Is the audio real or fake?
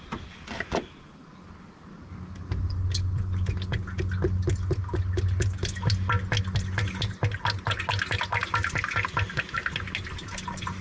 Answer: real